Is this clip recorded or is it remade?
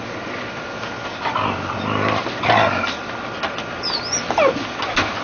recorded